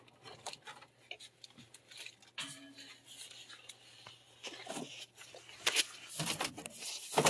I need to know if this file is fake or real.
real